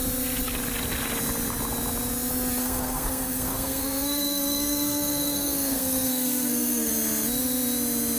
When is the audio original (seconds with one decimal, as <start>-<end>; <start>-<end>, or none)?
0.0-2.6; 6.9-8.2